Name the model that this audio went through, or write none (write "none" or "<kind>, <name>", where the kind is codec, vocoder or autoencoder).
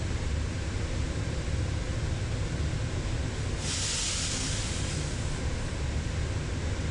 none